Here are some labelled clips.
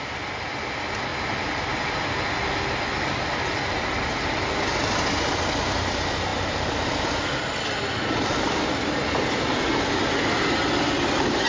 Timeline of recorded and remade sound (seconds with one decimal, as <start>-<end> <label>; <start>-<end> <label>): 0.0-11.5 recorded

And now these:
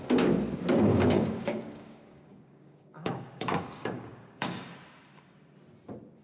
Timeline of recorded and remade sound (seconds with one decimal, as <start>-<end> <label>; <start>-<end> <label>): 0.0-0.9 recorded; 0.9-4.6 remade; 4.6-6.2 recorded

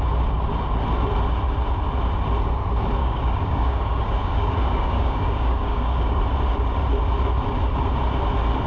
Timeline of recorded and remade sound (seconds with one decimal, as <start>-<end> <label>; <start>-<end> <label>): 0.0-3.0 recorded; 3.0-6.2 remade; 6.2-8.7 recorded

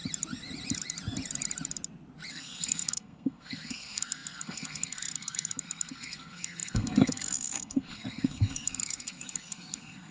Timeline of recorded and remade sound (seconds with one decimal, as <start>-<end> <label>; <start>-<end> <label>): 0.0-2.3 recorded; 2.3-10.1 remade

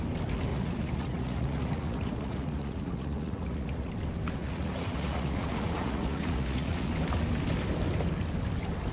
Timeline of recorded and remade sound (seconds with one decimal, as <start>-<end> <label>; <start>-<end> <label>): 0.0-0.5 recorded; 0.5-3.9 remade; 3.9-4.4 recorded; 4.4-6.9 remade; 6.9-8.9 recorded

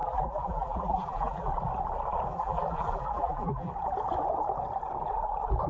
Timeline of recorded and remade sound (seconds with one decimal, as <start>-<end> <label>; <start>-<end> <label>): 0.0-1.5 remade; 1.5-2.3 recorded; 2.3-3.7 remade; 3.7-5.7 recorded

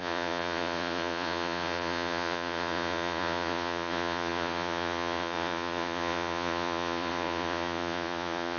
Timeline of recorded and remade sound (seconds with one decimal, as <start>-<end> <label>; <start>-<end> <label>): 0.0-8.6 remade

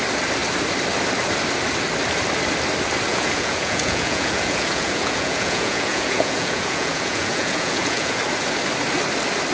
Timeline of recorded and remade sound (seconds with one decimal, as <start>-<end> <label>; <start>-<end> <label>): 0.0-3.1 recorded; 3.1-8.2 remade; 8.2-9.5 recorded